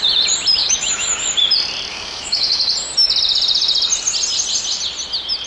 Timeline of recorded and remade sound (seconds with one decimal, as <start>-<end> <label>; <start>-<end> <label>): 0.0-0.6 recorded; 0.6-1.2 remade; 1.2-1.9 recorded; 1.9-2.6 remade; 2.6-5.5 recorded